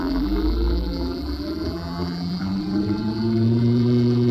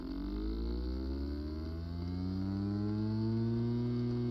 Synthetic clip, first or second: first